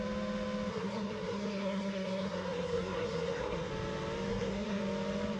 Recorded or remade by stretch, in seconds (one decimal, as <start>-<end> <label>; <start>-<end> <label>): 0.0-0.7 recorded; 0.7-3.7 remade; 3.7-4.3 recorded; 4.3-4.8 remade; 4.8-5.4 recorded